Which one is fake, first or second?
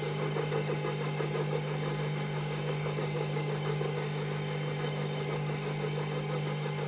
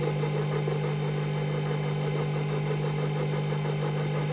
first